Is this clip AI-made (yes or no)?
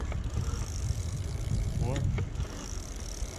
no